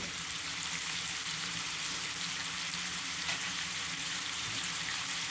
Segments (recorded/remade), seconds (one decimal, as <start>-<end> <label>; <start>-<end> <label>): 0.0-2.4 remade; 2.4-2.9 recorded; 2.9-5.3 remade